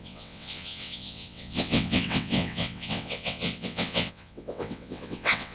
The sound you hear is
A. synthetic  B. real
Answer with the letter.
A